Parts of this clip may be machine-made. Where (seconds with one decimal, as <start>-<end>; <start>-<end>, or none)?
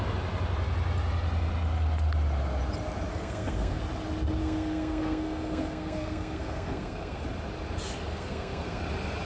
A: 3.1-3.8; 4.4-7.2; 8.1-8.8